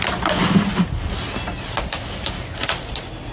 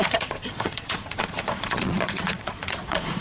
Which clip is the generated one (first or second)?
second